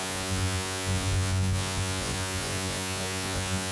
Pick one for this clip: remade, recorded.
remade